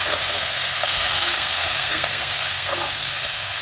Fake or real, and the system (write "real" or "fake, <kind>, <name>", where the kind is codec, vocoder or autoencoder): fake, codec, SNAC